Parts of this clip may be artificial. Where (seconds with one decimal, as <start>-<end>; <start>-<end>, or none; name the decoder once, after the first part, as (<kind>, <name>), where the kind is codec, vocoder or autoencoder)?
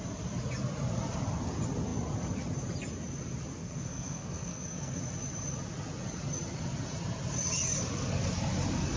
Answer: 3.6-5.0 (codec, SNAC)